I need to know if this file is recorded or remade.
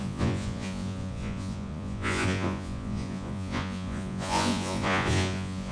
remade